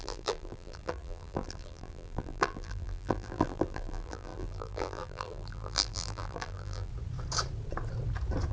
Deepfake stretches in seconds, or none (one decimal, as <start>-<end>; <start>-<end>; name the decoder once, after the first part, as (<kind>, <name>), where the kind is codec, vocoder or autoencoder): 0.0-6.9 (vocoder, BigVGAN v2)